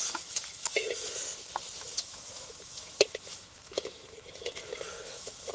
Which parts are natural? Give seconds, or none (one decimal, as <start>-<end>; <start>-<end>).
1.2-1.9